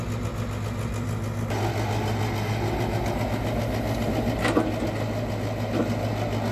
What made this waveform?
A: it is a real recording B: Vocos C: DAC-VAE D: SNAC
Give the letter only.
A